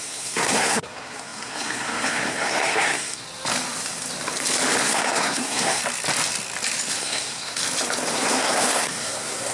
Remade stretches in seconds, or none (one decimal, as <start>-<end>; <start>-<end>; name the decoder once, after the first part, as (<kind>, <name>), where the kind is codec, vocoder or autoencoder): 0.0-3.2 (codec, SNAC); 4.8-5.8; 7.0-7.6; 8.1-9.5